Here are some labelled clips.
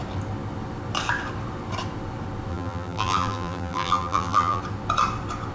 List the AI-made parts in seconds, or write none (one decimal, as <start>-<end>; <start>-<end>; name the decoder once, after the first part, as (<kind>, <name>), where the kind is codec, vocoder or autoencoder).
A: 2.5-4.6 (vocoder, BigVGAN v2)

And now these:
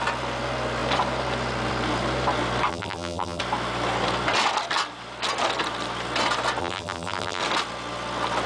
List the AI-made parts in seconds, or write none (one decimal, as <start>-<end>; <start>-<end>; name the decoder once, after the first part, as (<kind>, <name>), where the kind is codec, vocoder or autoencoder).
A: 2.7-3.4 (vocoder, BigVGAN v2); 6.6-7.4

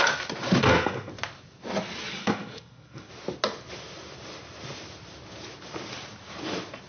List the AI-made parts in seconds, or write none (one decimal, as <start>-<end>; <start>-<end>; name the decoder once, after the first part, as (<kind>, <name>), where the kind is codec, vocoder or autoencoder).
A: 0.6-1.1 (codec, SNAC); 2.2-3.1

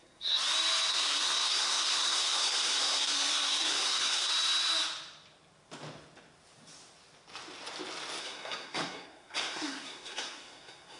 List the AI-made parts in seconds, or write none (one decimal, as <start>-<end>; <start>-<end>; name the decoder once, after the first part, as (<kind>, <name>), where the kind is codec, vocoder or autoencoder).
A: 0.0-0.4 (codec, SNAC); 0.9-4.3; 8.2-11.0

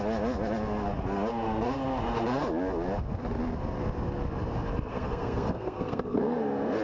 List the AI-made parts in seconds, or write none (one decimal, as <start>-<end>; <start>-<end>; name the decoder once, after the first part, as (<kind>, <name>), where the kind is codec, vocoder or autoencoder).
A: 4.9-6.8 (codec, SNAC)

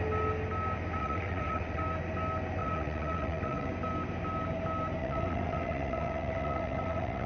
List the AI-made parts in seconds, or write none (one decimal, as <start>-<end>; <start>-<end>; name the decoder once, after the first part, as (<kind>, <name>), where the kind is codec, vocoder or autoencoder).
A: 1.0-1.8 (vocoder, WaveNeXt); 2.6-3.7; 5.0-7.3

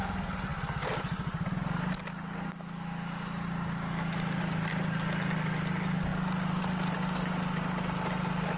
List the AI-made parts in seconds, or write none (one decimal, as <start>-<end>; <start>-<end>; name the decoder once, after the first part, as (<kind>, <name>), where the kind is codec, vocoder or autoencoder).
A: none

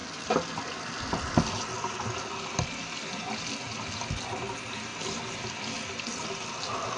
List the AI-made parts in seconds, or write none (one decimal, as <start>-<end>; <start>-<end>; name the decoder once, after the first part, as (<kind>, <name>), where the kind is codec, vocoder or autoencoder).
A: none